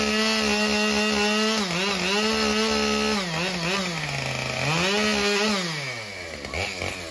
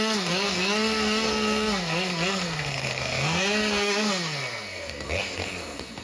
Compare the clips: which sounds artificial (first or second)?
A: second